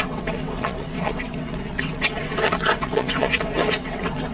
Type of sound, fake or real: fake